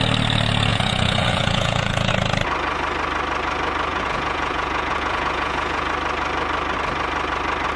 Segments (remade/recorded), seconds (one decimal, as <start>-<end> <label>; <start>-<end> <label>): 0.0-0.7 recorded; 0.7-2.1 remade; 2.1-3.9 recorded; 3.9-5.9 remade; 5.9-7.8 recorded